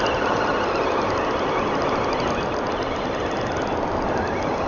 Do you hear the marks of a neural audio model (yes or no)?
no